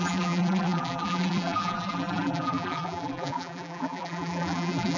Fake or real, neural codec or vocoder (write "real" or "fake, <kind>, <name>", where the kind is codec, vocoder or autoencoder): fake, vocoder, BigVGAN v2